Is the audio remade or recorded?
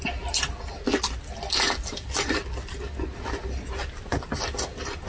recorded